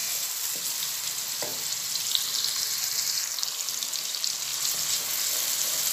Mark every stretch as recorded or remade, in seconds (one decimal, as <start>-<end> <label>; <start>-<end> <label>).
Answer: 0.0-1.0 remade; 1.0-4.5 recorded; 4.5-5.0 remade; 5.0-5.9 recorded